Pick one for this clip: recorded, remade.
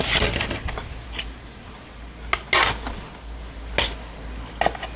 recorded